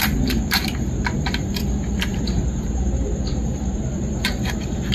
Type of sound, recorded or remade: remade